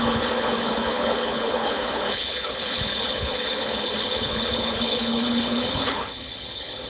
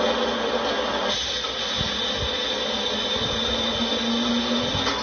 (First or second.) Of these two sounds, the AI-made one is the first